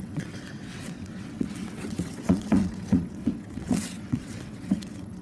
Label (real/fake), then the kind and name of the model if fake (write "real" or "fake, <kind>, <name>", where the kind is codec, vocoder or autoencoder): fake, vocoder, WaveNeXt